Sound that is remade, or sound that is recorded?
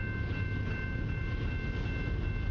recorded